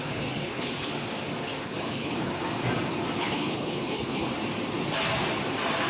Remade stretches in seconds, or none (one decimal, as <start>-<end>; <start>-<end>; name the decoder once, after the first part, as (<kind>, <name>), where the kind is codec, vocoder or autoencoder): 0.0-0.9 (codec, HILCodec); 1.6-2.3; 3.2-4.3